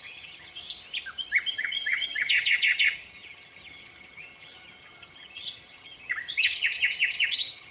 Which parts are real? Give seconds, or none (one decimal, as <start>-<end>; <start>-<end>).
0.6-1.5